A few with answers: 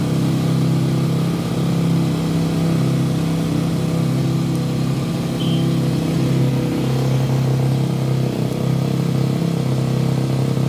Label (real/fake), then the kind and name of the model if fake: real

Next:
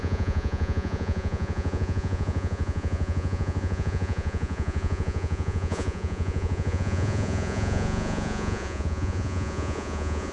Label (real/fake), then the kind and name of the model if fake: fake, vocoder, Vocos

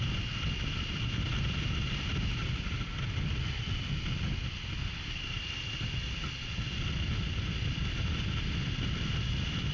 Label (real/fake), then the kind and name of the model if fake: real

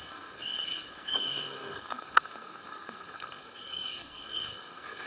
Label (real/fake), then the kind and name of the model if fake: fake, codec, SNAC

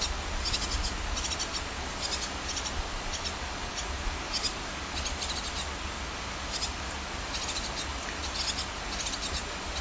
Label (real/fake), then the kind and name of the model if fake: real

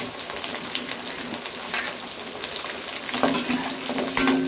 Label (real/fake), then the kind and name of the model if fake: real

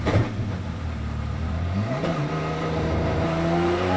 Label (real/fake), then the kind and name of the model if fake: fake, vocoder, BigVGAN v2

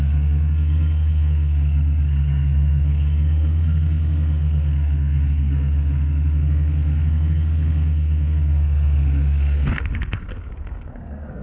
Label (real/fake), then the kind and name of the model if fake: fake, codec, SNAC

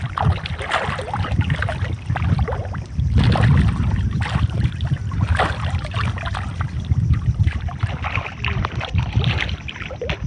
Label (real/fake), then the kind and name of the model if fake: real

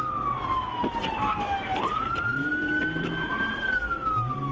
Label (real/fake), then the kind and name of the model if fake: real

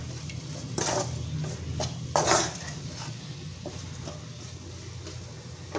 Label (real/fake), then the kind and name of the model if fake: real